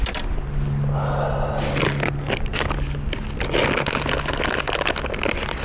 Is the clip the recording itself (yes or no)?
yes